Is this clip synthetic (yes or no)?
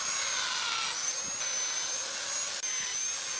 no